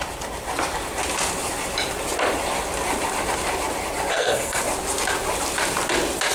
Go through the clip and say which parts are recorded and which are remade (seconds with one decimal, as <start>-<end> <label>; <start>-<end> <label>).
0.0-4.1 recorded; 4.1-4.6 remade; 4.6-6.3 recorded